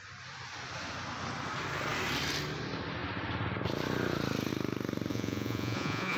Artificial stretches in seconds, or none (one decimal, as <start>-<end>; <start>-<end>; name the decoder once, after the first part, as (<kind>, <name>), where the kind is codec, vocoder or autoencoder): 5.1-6.2 (vocoder, Vocos)